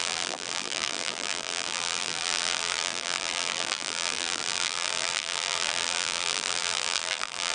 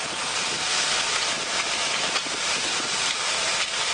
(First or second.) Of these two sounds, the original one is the second